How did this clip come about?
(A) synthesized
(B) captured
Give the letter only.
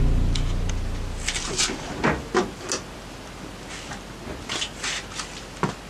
B